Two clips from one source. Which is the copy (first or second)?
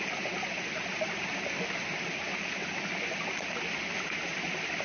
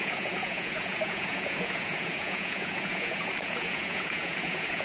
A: second